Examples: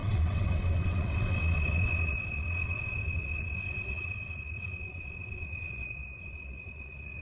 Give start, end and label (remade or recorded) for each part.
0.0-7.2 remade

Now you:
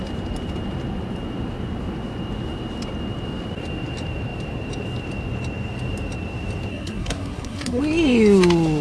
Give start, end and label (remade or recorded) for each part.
0.0-6.7 recorded; 6.7-7.8 remade; 7.8-8.8 recorded